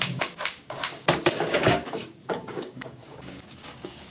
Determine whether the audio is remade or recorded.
remade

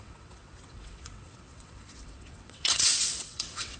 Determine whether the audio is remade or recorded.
remade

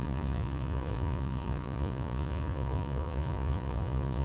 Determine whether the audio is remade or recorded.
remade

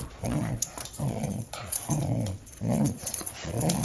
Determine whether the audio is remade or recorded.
remade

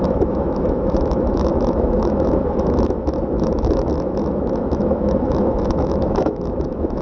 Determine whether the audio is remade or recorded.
remade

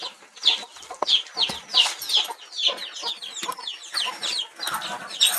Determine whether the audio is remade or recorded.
recorded